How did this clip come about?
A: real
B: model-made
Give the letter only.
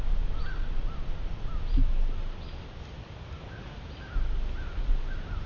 A